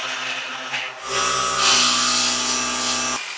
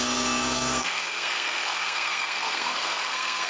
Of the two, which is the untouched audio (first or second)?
first